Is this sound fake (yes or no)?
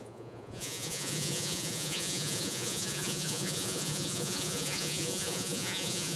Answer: yes